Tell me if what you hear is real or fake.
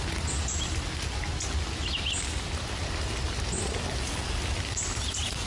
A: real